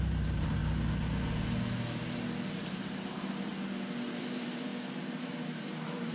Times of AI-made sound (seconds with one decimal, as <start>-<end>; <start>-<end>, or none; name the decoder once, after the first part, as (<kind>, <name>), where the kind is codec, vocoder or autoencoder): 0.0-0.6 (vocoder, BigVGAN v2); 2.6-3.5; 4.2-4.7; 5.2-6.1